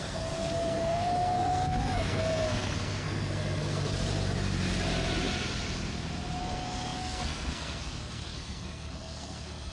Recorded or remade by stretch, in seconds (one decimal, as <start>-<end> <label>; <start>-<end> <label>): 0.0-3.9 remade; 3.9-6.4 recorded; 6.4-9.7 remade

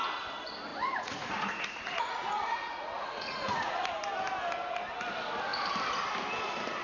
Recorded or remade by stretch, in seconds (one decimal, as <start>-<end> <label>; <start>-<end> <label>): 0.0-0.7 recorded; 0.7-4.0 remade; 4.0-6.8 recorded

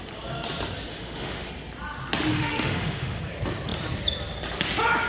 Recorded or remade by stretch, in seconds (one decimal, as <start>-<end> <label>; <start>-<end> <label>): 0.0-0.9 recorded; 0.9-1.5 remade; 1.5-2.3 recorded; 2.3-3.2 remade; 3.2-5.1 recorded